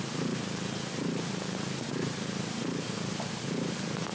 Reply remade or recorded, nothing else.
recorded